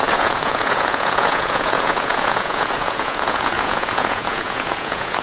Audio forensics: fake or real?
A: fake